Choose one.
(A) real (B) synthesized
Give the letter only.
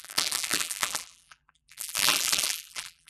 B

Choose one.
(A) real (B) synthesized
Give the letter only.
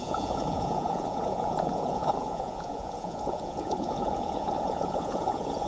B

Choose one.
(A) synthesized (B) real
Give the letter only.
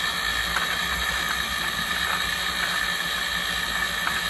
B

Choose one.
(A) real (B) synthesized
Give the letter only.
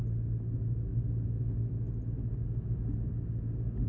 A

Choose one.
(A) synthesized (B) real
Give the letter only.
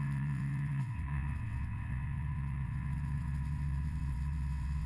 A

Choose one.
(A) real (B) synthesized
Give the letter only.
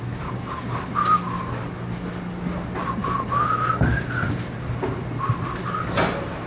A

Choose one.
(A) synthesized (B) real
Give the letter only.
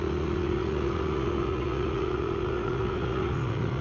A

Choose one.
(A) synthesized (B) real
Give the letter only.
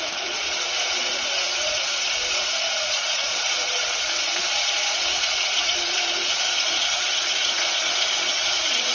A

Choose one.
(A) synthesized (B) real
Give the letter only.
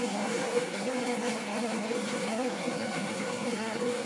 A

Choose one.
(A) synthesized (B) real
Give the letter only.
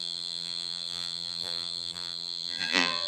A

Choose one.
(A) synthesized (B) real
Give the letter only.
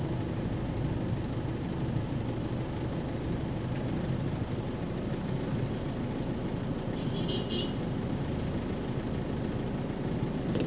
B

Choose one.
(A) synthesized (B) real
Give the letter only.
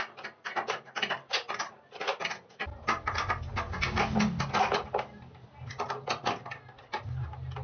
B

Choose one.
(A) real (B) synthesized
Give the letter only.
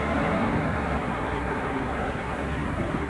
B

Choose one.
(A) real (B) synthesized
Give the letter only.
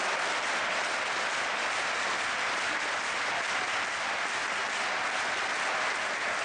A